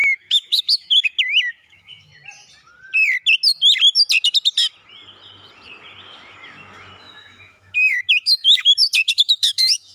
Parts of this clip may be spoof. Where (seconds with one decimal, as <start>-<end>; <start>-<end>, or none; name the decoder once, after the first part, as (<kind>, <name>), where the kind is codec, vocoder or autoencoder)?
0.0-2.1 (autoencoder, DAC-VAE); 7.0-9.9